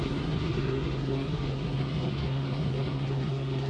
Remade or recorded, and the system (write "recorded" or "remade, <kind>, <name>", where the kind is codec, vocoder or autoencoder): remade, codec, SNAC